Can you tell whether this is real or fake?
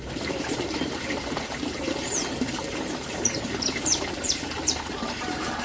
fake